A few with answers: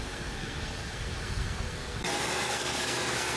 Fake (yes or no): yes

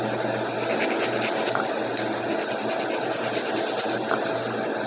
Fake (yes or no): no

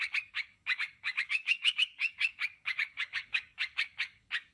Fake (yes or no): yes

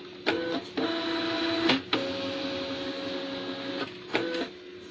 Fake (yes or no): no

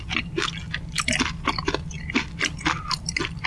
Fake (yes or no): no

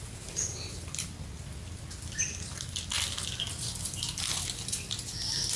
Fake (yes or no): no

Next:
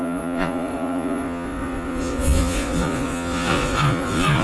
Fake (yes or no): yes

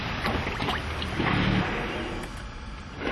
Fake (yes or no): no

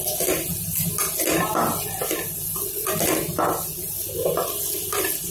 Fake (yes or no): no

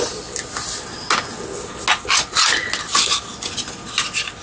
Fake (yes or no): no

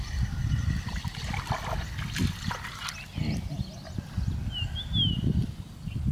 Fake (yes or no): no